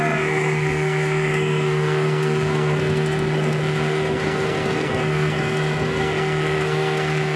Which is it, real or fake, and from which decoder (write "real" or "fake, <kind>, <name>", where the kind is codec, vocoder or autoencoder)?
fake, codec, SNAC